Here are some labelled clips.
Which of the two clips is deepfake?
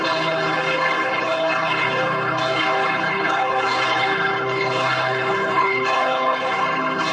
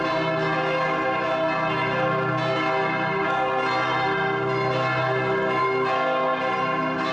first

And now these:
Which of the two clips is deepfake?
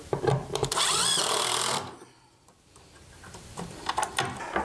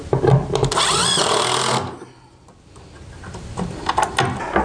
first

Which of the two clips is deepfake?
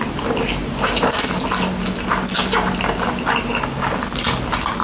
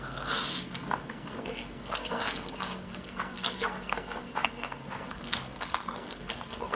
second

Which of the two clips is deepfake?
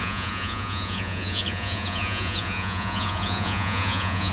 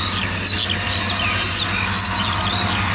first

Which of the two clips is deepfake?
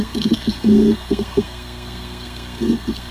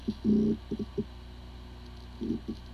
first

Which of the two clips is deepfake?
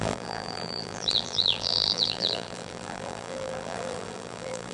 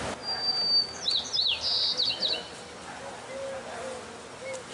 first